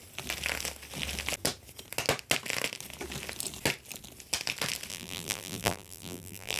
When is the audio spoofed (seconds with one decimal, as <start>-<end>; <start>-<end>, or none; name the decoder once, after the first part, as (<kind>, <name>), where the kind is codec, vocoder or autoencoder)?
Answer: 4.9-6.6 (vocoder, BigVGAN v2)